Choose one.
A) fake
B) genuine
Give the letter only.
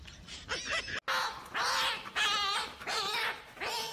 B